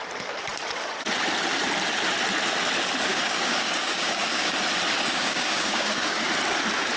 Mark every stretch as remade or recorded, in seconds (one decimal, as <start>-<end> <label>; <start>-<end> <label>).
0.0-3.1 recorded; 3.1-4.5 remade; 4.5-5.1 recorded; 5.1-6.3 remade; 6.3-7.0 recorded